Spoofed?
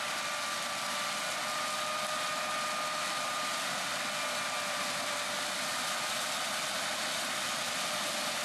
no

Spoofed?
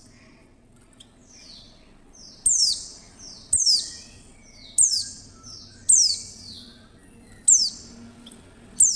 no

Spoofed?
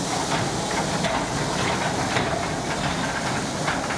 no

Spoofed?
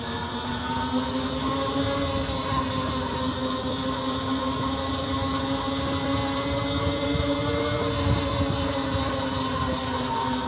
no